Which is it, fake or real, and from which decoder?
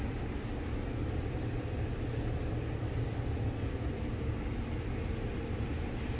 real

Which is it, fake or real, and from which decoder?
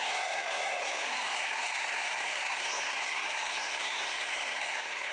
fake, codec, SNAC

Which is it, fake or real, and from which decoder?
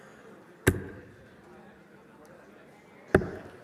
real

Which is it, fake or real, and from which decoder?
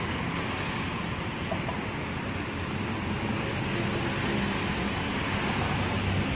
real